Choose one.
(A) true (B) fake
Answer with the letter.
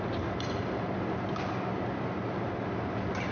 A